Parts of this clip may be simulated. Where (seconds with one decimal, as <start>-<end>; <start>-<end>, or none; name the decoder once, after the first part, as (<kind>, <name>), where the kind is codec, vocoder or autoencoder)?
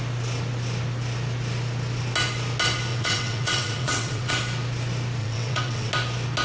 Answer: 2.9-4.3 (vocoder, WaveNeXt); 5.2-5.9